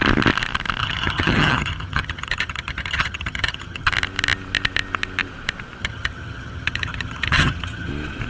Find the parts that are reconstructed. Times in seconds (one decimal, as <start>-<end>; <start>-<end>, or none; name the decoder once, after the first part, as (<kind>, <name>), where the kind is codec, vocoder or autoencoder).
0.8-3.9 (vocoder, HiFi-GAN); 5.8-7.9